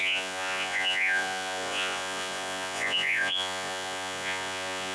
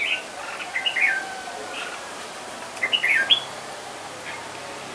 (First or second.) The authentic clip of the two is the second